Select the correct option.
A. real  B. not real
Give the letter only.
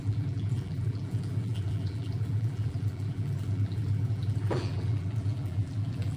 B